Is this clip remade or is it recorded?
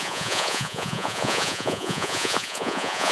remade